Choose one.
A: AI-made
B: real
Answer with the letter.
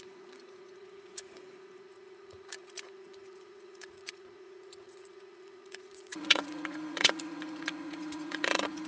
A